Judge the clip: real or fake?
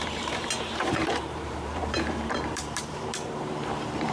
fake